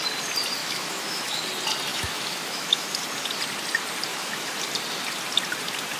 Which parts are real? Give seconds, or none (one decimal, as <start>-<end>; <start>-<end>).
0.0-0.6; 1.4-1.9; 2.9-4.1; 4.6-6.0